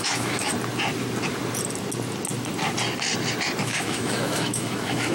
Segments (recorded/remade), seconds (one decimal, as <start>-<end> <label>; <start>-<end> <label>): 0.0-0.5 remade; 0.5-3.6 recorded; 3.6-5.1 remade

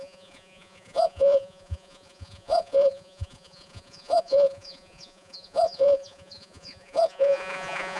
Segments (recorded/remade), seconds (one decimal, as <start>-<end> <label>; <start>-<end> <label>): 0.0-8.0 remade

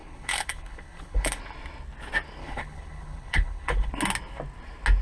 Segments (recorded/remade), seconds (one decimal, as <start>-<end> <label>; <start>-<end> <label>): 0.0-1.4 remade; 1.4-2.4 recorded; 2.4-3.9 remade; 3.9-5.0 recorded

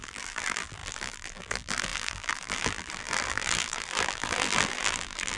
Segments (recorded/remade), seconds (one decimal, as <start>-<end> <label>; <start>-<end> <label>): 0.0-5.4 remade

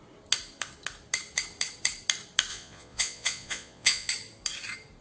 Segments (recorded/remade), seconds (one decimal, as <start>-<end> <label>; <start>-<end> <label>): 0.0-2.5 recorded; 2.5-4.1 remade; 4.1-5.0 recorded

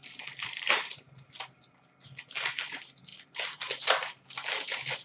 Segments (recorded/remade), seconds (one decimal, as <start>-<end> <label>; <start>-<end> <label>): 0.0-1.7 remade; 1.7-5.0 recorded

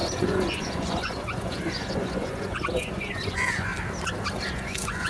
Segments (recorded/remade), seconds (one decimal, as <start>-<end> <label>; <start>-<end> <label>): 0.0-3.7 remade; 3.7-4.5 recorded; 4.5-5.1 remade

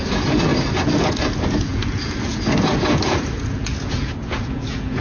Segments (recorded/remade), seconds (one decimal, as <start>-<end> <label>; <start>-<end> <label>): 0.0-0.5 remade; 0.5-1.2 recorded; 1.2-5.0 remade